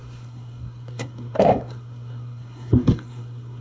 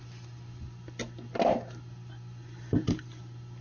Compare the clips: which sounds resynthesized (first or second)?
first